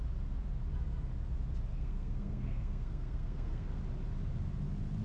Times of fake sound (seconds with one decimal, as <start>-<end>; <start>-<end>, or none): 1.7-3.8